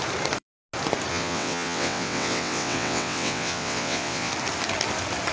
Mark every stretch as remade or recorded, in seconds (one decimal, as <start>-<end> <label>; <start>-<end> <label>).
0.0-1.1 recorded; 1.1-4.3 remade; 4.3-5.3 recorded